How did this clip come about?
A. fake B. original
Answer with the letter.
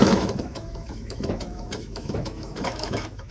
A